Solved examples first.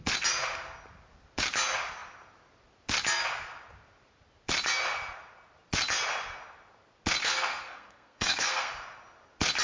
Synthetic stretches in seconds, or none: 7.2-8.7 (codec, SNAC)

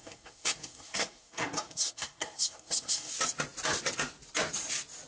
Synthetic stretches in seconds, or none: 0.0-3.1 (codec, SNAC)